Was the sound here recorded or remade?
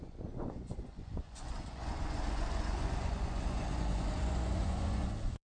remade